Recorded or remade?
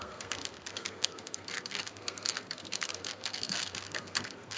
remade